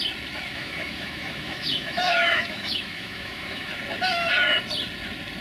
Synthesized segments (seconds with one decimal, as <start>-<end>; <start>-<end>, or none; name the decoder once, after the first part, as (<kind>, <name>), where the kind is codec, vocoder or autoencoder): 0.5-3.7 (autoencoder, DAC-VAE)